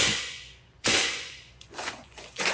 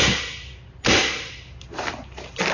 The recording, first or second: second